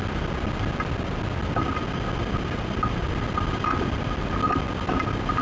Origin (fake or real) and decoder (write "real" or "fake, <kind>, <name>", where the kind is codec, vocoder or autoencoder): real